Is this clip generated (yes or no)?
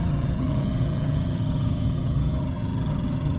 yes